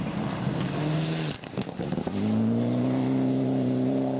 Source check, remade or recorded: recorded